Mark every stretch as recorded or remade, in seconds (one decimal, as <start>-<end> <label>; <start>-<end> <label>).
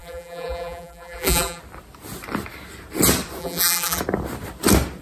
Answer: 0.0-1.6 remade; 1.6-3.4 recorded; 3.4-4.0 remade; 4.0-5.0 recorded